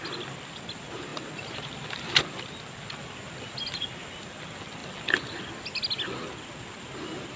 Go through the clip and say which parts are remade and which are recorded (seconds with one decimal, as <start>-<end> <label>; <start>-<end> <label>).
0.0-7.4 recorded